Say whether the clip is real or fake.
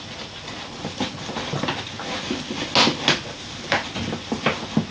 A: real